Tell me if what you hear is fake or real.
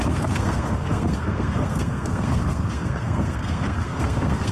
fake